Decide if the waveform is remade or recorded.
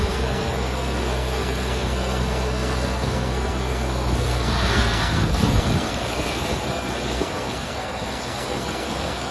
remade